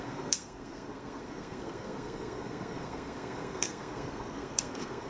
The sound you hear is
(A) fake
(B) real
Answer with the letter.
A